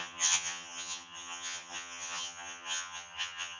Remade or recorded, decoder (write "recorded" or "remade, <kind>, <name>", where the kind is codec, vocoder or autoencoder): remade, vocoder, HiFi-GAN